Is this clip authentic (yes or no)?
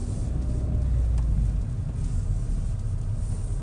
yes